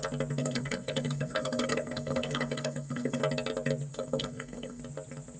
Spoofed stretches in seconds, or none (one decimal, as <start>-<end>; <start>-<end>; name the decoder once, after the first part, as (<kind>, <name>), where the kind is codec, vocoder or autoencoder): 0.4-3.2 (codec, SNAC); 3.9-4.8